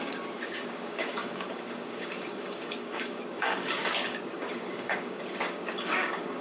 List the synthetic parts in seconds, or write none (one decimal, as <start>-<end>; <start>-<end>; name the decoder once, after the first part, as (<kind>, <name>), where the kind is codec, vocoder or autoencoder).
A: 0.0-6.4 (codec, DAC)